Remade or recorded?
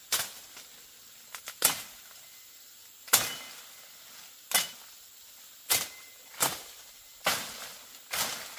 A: recorded